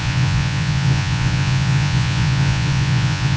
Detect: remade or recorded remade